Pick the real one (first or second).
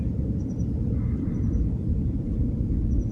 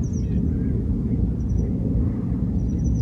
second